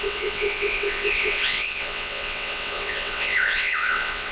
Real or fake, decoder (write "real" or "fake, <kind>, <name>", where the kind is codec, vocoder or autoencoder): fake, vocoder, WaveNeXt